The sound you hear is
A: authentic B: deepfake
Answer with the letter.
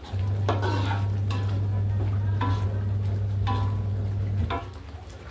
A